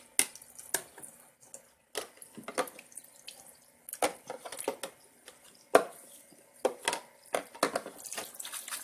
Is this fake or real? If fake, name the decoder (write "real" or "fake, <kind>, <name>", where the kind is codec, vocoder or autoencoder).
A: real